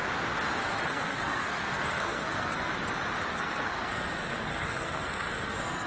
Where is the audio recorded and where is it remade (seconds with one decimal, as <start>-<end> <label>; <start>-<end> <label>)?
0.0-0.6 recorded; 0.6-2.7 remade; 2.7-3.3 recorded; 3.3-5.9 remade